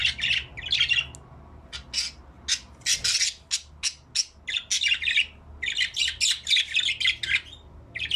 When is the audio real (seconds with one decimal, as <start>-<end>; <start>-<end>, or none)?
0.0-8.2